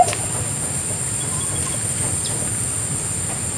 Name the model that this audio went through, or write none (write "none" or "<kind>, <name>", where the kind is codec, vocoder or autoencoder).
none